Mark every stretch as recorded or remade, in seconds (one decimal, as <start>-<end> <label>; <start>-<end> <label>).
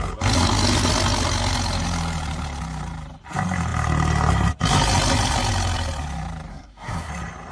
0.0-6.5 recorded; 6.5-7.1 remade; 7.1-7.5 recorded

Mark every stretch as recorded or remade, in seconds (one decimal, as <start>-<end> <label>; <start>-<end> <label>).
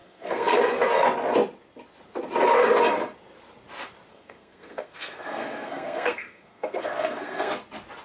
0.0-0.6 remade; 0.6-4.1 recorded; 4.1-7.5 remade; 7.5-8.0 recorded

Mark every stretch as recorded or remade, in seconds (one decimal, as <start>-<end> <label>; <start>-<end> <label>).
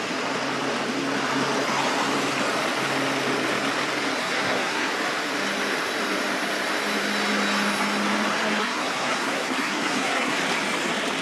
0.0-4.2 recorded; 4.2-4.9 remade; 4.9-8.6 recorded; 8.6-10.4 remade; 10.4-11.2 recorded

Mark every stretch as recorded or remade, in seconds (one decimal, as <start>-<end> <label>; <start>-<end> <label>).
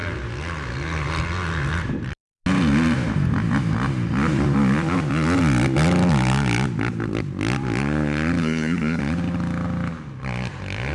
0.0-8.4 recorded; 8.4-9.0 remade; 9.0-10.9 recorded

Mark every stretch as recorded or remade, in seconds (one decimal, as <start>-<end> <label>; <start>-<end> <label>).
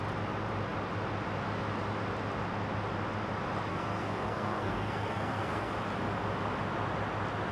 0.0-3.7 recorded; 3.7-5.7 remade; 5.7-7.5 recorded